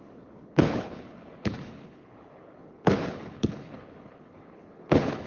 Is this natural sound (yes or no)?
no